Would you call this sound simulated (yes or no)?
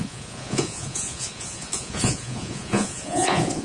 yes